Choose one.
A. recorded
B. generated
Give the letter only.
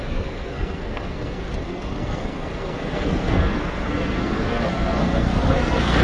B